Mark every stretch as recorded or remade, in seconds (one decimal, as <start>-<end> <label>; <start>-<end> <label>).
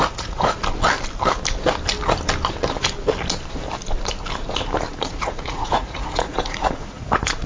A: 0.0-0.6 remade; 0.6-4.9 recorded; 4.9-7.5 remade